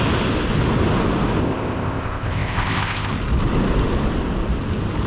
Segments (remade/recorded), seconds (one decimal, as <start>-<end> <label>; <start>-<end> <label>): 0.0-1.4 recorded; 1.4-3.1 remade; 3.1-5.1 recorded